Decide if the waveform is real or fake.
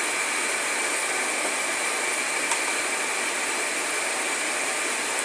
real